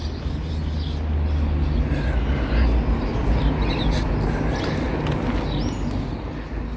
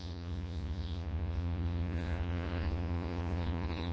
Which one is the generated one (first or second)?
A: second